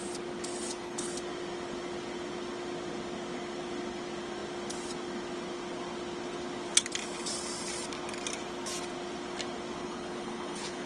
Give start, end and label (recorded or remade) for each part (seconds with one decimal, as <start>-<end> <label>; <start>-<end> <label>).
0.0-0.5 recorded; 0.5-1.1 remade; 1.1-9.8 recorded; 9.8-10.9 remade